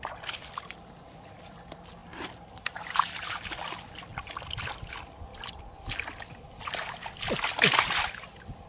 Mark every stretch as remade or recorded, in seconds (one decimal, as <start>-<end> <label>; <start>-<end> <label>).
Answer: 0.0-2.0 recorded; 2.0-3.4 remade; 3.4-8.7 recorded